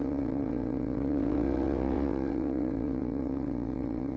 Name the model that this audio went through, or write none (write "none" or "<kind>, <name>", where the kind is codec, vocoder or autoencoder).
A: vocoder, WaveNeXt